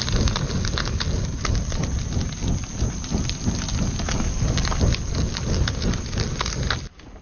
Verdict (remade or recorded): recorded